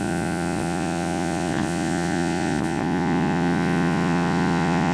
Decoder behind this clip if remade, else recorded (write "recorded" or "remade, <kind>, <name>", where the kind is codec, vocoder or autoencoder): remade, vocoder, Vocos